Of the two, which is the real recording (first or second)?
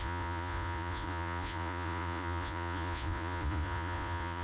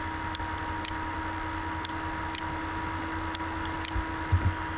second